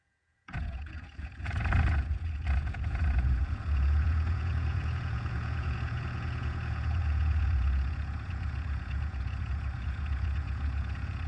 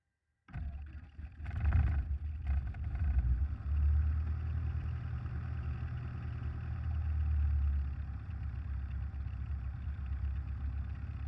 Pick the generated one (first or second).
first